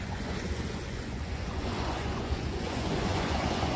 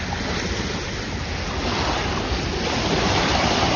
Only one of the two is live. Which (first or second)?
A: second